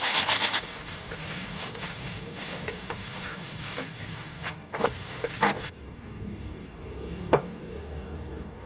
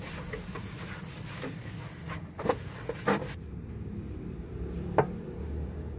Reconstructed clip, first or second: first